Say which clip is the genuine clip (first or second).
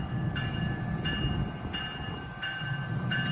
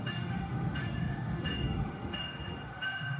first